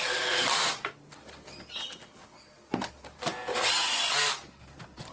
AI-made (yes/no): no